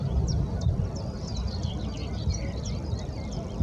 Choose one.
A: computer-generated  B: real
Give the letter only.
B